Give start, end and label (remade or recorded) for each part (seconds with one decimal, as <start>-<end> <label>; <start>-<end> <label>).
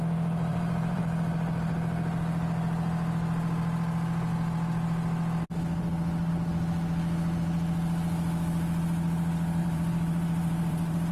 0.0-0.5 recorded; 0.5-1.0 remade; 1.0-9.6 recorded; 9.6-11.1 remade